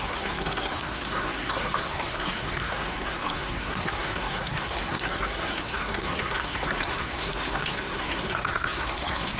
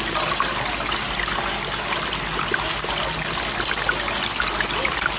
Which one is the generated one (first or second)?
first